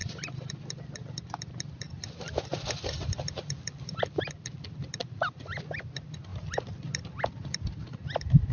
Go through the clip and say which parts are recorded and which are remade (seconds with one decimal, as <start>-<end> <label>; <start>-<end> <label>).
0.0-8.5 recorded